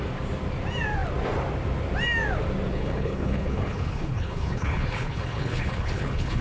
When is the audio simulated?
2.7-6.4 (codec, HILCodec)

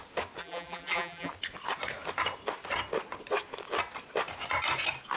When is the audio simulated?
0.4-1.3 (vocoder, BigVGAN v2)

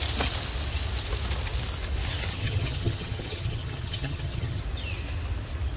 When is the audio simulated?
2.3-4.6 (vocoder, HiFi-GAN)